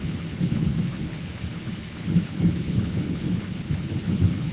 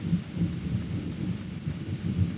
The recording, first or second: second